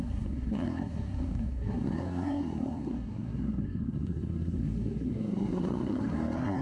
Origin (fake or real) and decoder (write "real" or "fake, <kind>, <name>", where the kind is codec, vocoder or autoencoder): fake, codec, SNAC